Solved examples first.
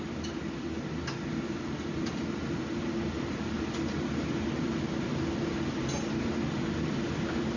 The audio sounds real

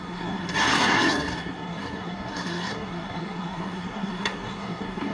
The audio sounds fake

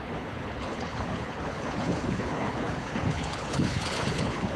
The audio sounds fake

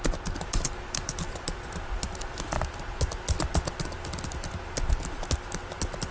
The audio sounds real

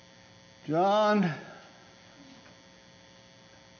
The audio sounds real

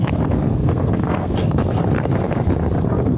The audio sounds fake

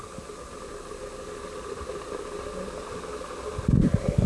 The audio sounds real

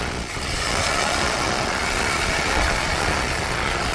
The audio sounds fake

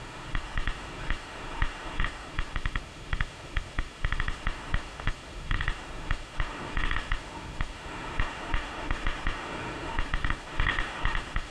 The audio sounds fake